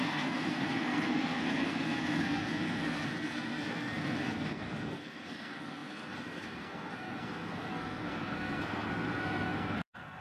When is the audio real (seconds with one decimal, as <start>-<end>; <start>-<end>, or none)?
none